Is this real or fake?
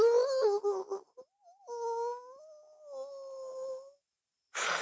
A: real